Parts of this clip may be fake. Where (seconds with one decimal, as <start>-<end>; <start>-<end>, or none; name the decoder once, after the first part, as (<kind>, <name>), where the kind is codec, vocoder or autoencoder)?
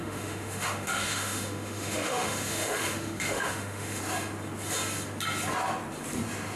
0.0-4.0 (autoencoder, DAC-VAE)